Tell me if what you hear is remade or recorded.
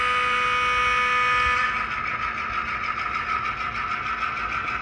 recorded